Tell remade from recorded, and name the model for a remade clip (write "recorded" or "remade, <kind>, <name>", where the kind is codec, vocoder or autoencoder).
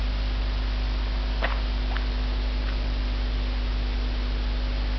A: recorded